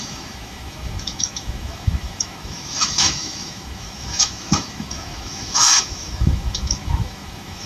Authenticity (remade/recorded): remade